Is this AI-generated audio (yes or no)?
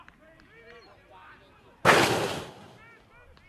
no